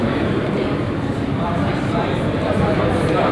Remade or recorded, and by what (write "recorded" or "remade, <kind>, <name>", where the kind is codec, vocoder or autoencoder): remade, vocoder, BigVGAN v2